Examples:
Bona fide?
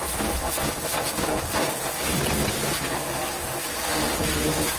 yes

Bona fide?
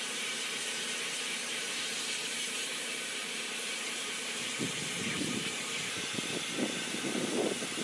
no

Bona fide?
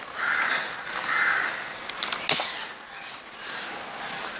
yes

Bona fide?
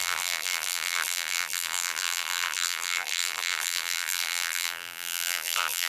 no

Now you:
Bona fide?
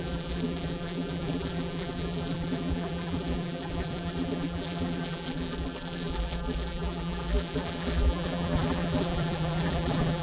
no